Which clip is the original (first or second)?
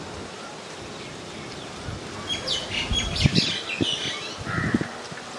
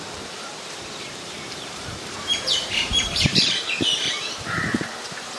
first